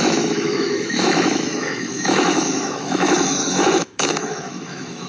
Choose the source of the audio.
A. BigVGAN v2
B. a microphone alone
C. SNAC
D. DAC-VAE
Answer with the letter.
D